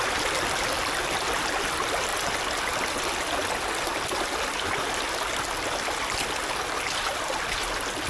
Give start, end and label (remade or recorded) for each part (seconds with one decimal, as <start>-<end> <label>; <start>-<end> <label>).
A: 0.0-8.1 recorded